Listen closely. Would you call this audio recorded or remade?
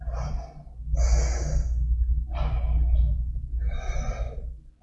recorded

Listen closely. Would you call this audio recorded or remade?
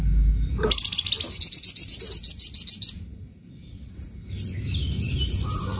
recorded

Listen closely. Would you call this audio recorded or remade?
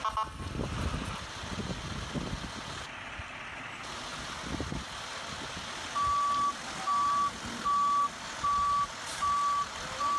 recorded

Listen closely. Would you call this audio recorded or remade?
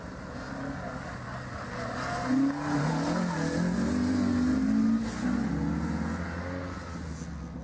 recorded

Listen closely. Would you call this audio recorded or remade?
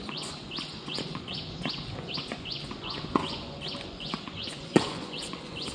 remade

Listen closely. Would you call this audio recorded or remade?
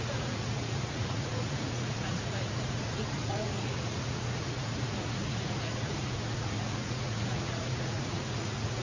remade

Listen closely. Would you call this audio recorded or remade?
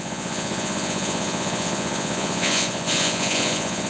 remade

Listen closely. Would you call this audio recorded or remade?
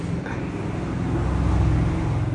recorded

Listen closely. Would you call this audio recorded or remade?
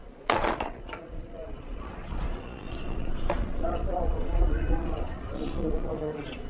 remade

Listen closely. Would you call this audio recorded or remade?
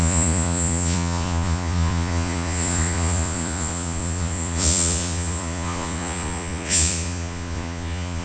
remade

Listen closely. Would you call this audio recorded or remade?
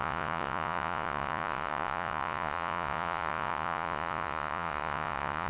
remade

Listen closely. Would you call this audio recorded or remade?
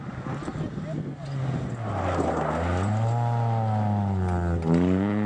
recorded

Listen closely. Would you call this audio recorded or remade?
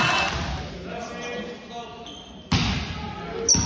recorded